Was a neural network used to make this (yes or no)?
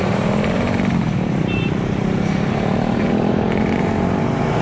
yes